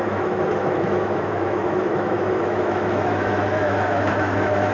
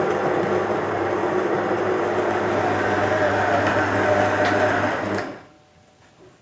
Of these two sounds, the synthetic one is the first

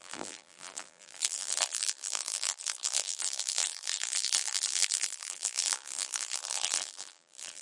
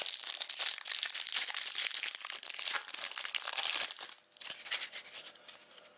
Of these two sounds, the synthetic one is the first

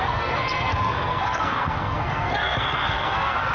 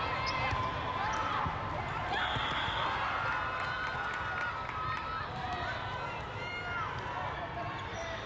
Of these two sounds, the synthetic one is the first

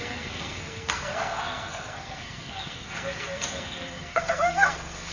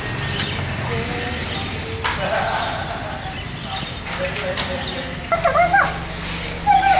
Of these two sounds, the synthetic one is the first